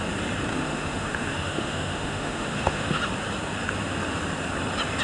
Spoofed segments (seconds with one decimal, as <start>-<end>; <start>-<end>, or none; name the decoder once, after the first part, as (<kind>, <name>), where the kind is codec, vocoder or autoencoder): 0.5-3.0 (autoencoder, DAC-VAE)